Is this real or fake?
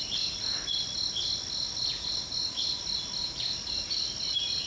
real